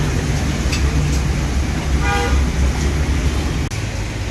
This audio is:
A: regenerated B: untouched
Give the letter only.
B